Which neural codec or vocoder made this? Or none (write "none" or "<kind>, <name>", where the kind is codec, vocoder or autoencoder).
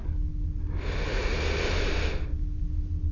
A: none